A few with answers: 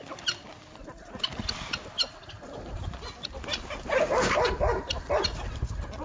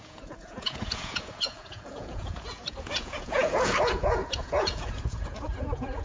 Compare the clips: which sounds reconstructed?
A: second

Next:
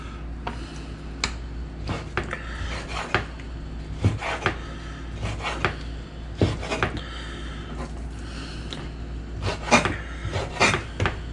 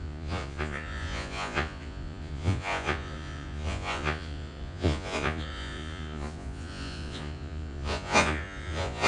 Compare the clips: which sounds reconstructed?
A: second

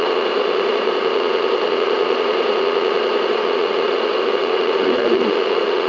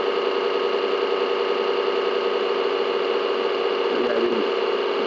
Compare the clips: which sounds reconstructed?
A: first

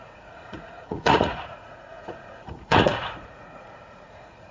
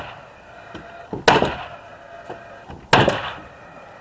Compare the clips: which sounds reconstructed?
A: first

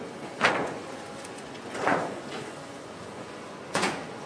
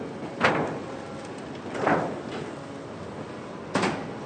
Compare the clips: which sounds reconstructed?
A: first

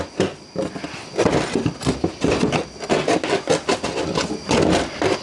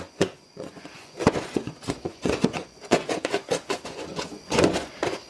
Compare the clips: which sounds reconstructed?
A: second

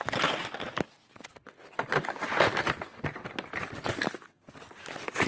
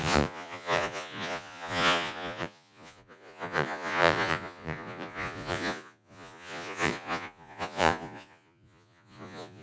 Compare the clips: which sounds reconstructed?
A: second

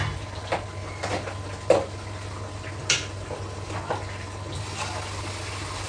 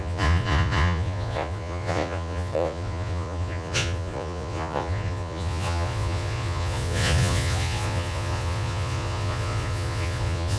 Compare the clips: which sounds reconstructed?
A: second